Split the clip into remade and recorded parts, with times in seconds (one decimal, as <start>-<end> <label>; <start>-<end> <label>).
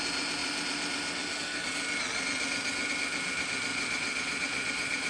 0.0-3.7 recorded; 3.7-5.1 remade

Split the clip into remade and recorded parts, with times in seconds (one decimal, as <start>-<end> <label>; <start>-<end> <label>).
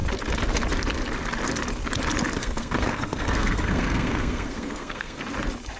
0.0-2.4 recorded; 2.4-5.2 remade; 5.2-5.8 recorded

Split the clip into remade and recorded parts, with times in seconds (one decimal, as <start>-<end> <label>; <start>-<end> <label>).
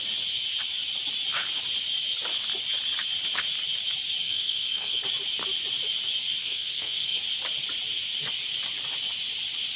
0.0-4.2 recorded; 4.2-5.0 remade; 5.0-6.4 recorded; 6.4-7.2 remade; 7.2-9.8 recorded